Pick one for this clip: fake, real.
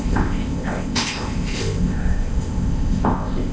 fake